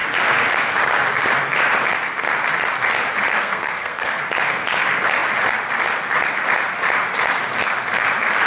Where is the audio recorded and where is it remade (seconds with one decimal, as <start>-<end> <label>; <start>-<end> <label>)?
0.0-3.3 recorded; 3.3-4.2 remade; 4.2-8.5 recorded

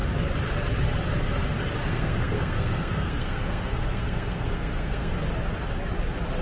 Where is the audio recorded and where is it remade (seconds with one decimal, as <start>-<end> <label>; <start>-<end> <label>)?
0.0-1.8 recorded; 1.8-5.1 remade; 5.1-6.4 recorded

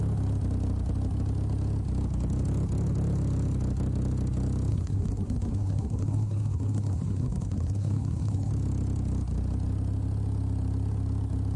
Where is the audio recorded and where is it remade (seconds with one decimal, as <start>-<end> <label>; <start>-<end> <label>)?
0.0-4.7 recorded; 4.7-8.5 remade; 8.5-11.6 recorded

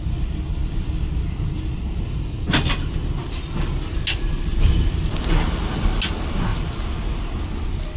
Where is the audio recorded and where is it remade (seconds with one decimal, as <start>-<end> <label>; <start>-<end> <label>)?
0.0-8.0 recorded

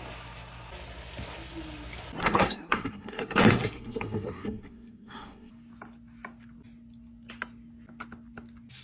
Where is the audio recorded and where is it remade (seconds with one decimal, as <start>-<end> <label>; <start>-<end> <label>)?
0.0-2.2 recorded; 2.2-5.5 remade; 5.5-8.8 recorded

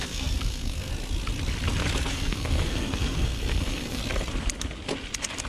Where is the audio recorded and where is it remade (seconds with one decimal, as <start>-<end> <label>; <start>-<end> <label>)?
0.0-0.9 remade; 0.9-2.1 recorded; 2.1-4.0 remade; 4.0-5.5 recorded

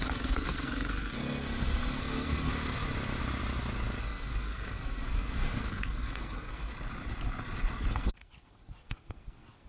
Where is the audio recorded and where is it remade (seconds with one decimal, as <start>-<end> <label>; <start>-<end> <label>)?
0.0-2.5 remade; 2.5-4.0 recorded; 4.0-6.7 remade; 6.7-7.9 recorded; 7.9-9.7 remade

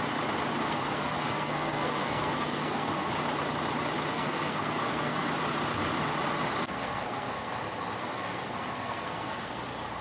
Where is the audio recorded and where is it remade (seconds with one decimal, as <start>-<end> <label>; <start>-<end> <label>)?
0.0-0.6 recorded; 0.6-3.1 remade; 3.1-4.1 recorded; 4.1-5.3 remade; 5.3-6.6 recorded; 6.6-7.5 remade; 7.5-8.0 recorded; 8.0-9.6 remade; 9.6-10.0 recorded